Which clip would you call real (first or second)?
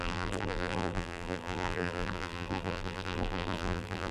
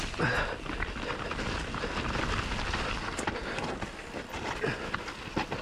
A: second